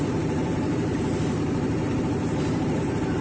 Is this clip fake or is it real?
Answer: fake